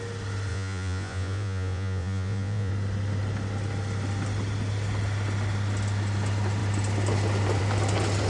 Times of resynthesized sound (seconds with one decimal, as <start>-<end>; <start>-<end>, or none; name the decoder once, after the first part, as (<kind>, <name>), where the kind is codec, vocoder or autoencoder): 0.5-2.7 (vocoder, Vocos)